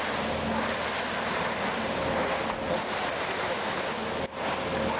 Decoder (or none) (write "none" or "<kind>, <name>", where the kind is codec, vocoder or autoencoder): none